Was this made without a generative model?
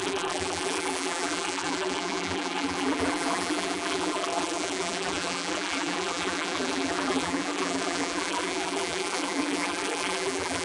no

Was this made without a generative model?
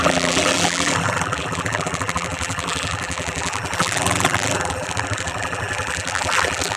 no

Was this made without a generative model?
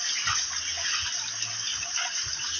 yes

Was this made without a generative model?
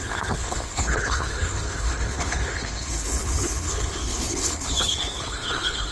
no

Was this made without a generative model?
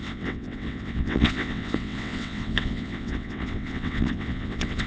no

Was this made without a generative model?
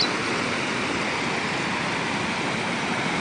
yes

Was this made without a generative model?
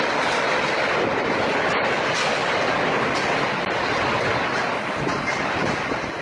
yes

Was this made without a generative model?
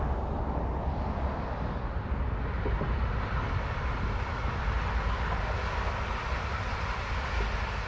yes